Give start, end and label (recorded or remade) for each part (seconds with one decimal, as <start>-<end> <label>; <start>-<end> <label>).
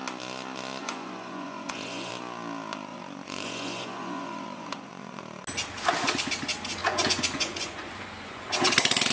0.0-0.8 recorded; 0.8-2.1 remade; 2.1-2.9 recorded; 2.9-5.2 remade; 5.2-6.8 recorded; 6.8-8.7 remade; 8.7-9.1 recorded